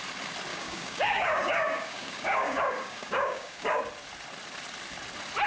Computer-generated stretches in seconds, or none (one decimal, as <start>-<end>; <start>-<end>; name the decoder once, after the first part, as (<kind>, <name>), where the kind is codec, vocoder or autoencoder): 0.5-3.8 (codec, DAC)